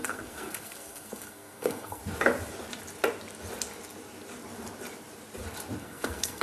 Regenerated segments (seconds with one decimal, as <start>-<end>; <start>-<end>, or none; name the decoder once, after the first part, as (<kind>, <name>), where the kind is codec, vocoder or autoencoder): 0.0-2.0 (codec, SNAC); 5.8-6.4